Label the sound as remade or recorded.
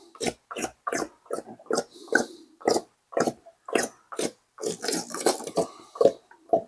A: recorded